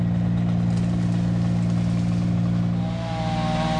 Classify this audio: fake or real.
real